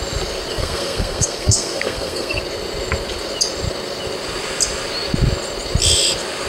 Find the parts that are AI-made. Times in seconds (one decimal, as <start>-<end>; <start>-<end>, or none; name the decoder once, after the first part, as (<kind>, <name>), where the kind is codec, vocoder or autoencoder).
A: 0.5-2.4 (codec, SNAC)